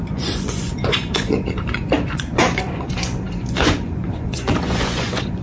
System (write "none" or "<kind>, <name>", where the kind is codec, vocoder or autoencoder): vocoder, Vocos